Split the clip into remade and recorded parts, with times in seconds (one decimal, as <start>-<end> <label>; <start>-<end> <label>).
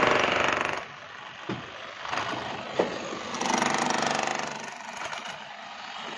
0.0-6.2 recorded